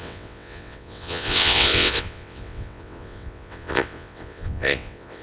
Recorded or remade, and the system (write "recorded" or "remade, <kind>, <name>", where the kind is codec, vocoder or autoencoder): remade, vocoder, WaveNeXt